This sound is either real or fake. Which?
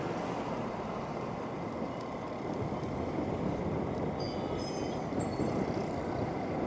real